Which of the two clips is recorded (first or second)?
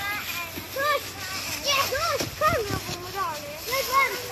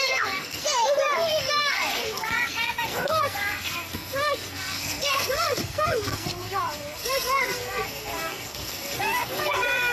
first